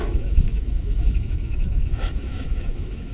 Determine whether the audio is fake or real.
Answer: fake